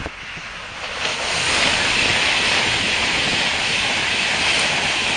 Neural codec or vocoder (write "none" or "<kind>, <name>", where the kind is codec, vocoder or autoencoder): none